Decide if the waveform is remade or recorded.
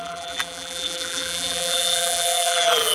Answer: remade